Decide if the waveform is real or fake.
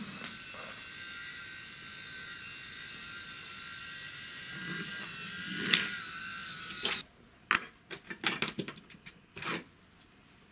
real